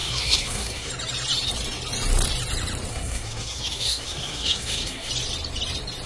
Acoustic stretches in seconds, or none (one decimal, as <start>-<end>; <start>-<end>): 0.9-2.9; 5.1-6.1